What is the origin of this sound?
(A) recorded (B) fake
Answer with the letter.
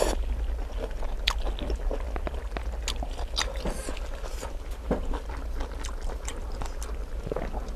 A